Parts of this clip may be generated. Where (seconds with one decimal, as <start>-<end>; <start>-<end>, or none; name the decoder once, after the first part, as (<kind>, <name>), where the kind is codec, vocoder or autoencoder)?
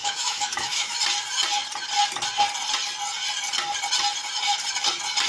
0.0-1.0 (autoencoder, DAC-VAE)